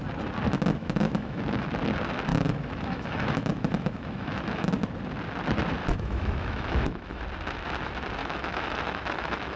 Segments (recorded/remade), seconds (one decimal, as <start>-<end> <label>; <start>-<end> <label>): 0.0-0.8 recorded; 0.8-1.7 remade; 1.7-2.3 recorded; 2.3-4.7 remade; 4.7-5.8 recorded; 5.8-7.2 remade; 7.2-8.2 recorded; 8.2-9.6 remade